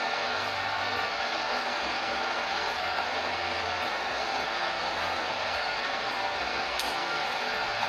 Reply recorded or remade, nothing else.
remade